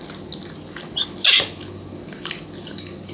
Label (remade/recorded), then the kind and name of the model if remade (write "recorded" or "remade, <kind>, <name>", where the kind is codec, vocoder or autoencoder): recorded